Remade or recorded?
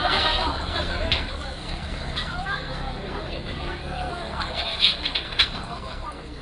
remade